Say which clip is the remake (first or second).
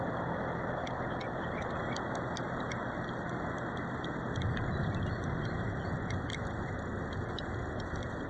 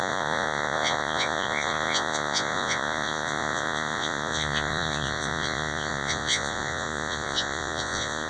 second